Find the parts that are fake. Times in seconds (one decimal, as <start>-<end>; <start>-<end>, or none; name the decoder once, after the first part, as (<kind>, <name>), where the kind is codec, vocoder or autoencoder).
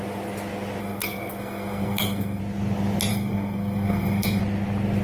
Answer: 0.8-2.4 (codec, SNAC); 3.1-4.4